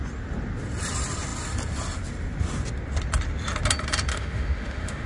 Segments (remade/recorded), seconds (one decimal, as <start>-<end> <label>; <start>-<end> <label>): 0.0-4.1 recorded; 4.1-5.1 remade